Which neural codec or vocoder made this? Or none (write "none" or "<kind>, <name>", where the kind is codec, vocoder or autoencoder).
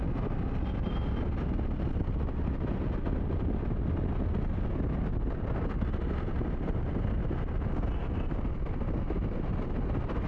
none